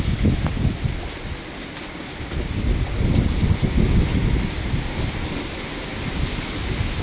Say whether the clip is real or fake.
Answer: real